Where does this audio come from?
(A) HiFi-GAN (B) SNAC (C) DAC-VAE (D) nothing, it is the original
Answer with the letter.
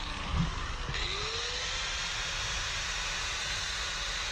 D